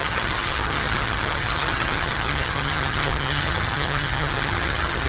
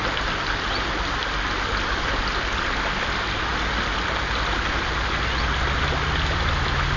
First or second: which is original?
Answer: second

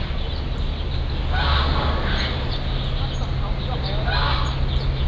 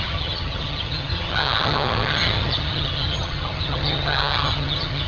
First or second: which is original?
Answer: first